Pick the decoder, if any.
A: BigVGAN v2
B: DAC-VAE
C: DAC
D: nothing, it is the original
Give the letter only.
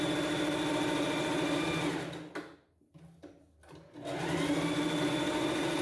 D